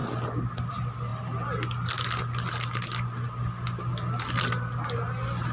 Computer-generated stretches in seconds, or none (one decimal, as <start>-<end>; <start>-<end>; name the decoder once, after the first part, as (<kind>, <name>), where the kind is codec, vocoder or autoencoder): none

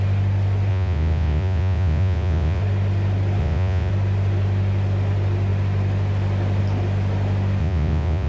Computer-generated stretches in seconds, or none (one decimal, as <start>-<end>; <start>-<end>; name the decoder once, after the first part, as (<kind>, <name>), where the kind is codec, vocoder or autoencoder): 0.7-2.6 (vocoder, Vocos); 3.4-3.9; 7.6-8.3

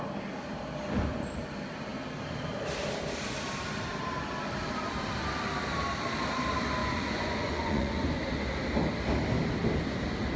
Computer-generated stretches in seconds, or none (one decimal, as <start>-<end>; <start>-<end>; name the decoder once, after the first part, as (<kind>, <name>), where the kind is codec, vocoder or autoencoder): 6.8-8.2 (vocoder, Vocos)

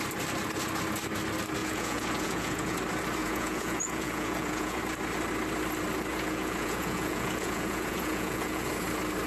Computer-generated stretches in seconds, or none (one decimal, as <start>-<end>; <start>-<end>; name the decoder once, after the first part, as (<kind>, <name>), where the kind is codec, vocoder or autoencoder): 1.6-2.8 (vocoder, Vocos); 3.2-4.8; 6.1-8.7

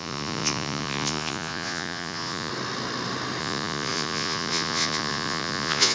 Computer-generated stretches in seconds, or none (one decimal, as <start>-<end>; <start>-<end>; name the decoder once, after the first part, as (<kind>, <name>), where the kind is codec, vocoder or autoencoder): 0.0-2.5 (vocoder, Vocos); 3.4-5.9